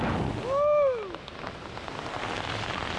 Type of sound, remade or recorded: recorded